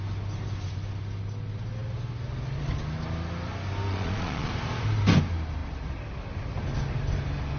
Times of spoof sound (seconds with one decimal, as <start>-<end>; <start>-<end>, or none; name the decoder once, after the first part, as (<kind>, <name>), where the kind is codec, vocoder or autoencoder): 3.9-4.5 (vocoder, Vocos)